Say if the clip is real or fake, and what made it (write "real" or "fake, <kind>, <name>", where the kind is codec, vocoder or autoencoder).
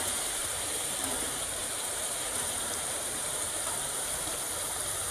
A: fake, vocoder, BigVGAN v2